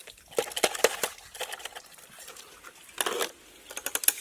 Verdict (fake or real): real